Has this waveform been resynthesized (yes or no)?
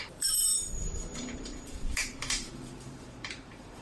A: yes